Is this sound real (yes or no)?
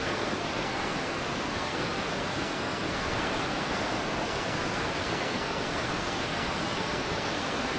no